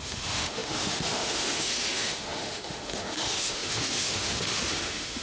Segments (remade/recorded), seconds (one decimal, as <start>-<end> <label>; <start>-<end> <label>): 0.0-5.2 remade

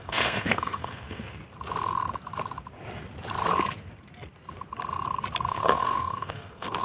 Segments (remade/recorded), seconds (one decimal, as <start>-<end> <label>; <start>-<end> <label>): 0.0-1.4 remade; 1.4-5.5 recorded; 5.5-6.8 remade

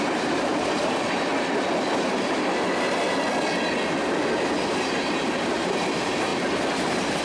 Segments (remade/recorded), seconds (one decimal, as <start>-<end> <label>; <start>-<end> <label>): 0.0-1.3 remade; 1.3-4.8 recorded; 4.8-6.3 remade; 6.3-7.2 recorded